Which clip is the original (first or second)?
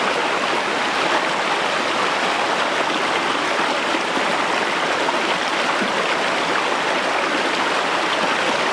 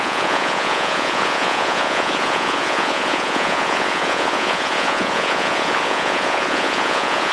first